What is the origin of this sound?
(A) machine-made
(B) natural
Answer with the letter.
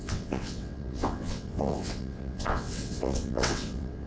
A